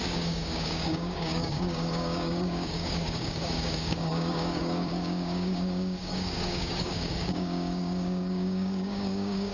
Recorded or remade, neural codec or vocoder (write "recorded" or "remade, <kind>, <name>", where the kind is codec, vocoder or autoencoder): remade, codec, DAC